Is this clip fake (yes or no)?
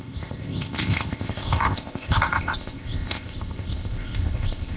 yes